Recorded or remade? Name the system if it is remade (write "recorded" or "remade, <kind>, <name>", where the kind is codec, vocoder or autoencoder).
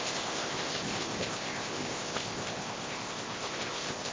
remade, codec, ZipCodec